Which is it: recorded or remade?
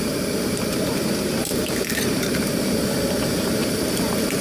remade